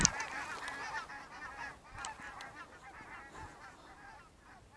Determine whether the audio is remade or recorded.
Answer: recorded